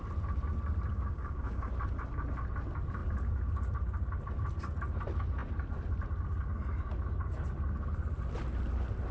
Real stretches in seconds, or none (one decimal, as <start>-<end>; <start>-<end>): 0.0-0.9; 1.7-9.1